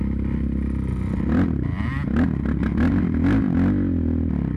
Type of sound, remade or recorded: recorded